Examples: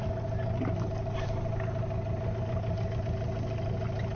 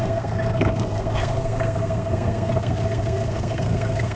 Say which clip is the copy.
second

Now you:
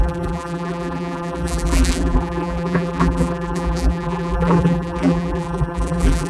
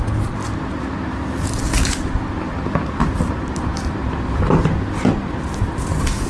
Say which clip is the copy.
first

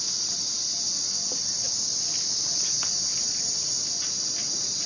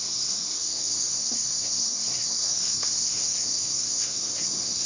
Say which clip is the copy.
second